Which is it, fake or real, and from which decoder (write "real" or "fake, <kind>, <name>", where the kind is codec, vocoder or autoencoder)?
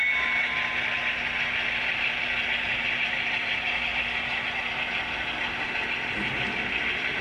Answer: real